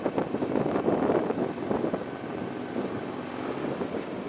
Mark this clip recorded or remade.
recorded